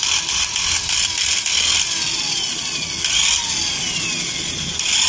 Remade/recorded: recorded